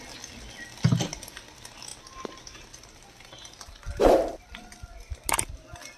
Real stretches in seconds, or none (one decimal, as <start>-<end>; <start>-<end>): 0.0-6.0